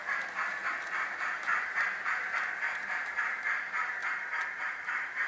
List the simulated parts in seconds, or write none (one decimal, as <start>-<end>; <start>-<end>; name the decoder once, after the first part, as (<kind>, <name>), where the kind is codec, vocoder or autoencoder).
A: 1.4-5.3 (vocoder, BigVGAN v2)